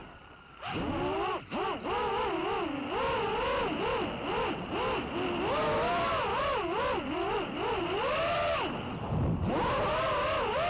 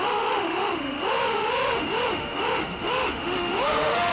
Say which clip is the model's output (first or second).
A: second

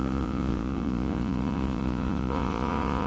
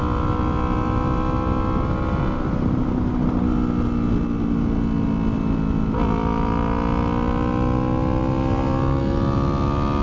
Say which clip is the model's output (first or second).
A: first